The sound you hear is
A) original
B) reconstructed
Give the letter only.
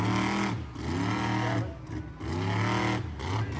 A